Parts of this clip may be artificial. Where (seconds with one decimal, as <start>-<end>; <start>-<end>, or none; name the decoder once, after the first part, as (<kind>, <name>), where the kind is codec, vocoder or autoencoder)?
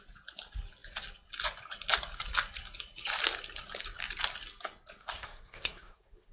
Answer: 5.0-6.3 (codec, SNAC)